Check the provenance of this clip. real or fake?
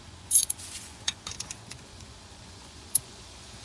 fake